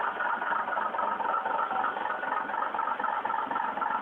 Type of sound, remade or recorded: recorded